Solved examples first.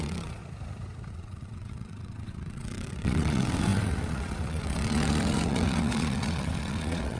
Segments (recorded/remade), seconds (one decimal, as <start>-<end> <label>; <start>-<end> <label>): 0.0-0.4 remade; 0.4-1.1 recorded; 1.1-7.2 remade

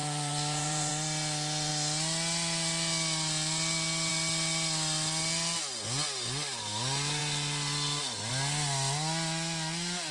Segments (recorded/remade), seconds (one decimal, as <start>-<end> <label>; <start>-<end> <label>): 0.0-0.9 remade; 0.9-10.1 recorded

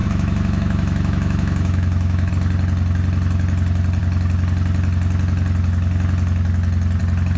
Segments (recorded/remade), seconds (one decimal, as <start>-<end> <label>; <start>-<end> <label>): 0.0-2.3 remade; 2.3-7.4 recorded